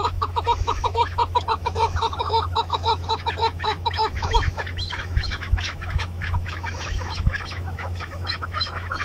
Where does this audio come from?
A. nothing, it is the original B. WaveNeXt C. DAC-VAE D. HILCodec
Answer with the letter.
C